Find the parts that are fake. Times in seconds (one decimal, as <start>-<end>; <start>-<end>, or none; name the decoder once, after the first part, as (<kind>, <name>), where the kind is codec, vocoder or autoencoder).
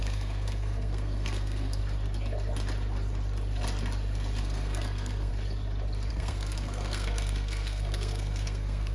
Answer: 0.0-1.8 (codec, SNAC); 4.4-5.3; 6.1-8.9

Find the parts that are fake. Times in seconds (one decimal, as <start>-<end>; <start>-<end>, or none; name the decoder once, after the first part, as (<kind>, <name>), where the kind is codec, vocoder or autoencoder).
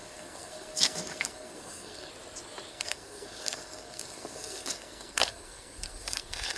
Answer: 0.0-2.1 (codec, SNAC); 2.7-6.6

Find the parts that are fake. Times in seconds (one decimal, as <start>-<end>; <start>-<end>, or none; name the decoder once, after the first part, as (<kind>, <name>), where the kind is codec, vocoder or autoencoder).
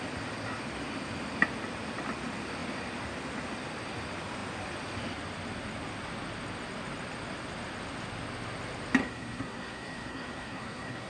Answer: 9.0-11.1 (codec, SNAC)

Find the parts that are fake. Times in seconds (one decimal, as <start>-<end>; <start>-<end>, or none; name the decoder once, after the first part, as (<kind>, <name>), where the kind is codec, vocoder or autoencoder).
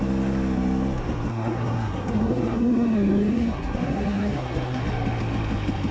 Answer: 1.3-4.8 (codec, SNAC)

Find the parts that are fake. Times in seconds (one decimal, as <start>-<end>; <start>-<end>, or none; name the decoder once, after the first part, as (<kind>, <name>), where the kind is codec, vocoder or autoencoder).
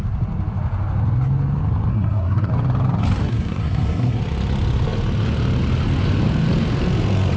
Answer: 1.9-2.5 (codec, SNAC); 3.2-4.2